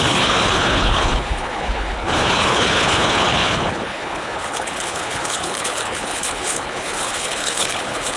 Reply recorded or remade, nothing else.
remade